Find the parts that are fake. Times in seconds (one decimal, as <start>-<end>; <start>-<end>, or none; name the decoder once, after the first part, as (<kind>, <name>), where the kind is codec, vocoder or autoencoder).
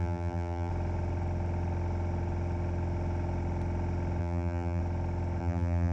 0.0-0.7 (vocoder, BigVGAN v2); 4.2-4.8; 5.4-5.9